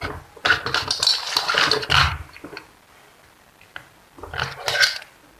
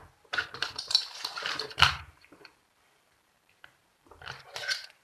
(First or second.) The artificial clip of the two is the second